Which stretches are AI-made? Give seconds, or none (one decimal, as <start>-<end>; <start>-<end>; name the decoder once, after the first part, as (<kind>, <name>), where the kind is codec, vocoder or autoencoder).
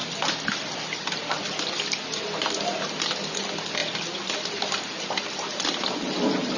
none